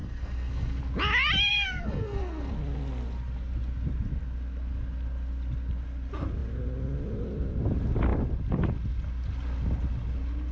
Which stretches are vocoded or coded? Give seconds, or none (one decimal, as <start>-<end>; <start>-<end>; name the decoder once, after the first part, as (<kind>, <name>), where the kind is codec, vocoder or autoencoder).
0.0-0.8 (codec, SNAC); 1.5-2.5